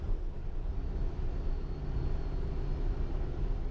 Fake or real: real